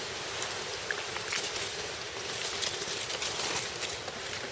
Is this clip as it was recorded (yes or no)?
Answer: yes